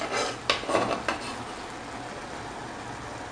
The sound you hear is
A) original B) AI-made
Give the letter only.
A